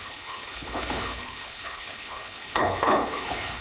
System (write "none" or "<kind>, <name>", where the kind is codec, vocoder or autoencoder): codec, HILCodec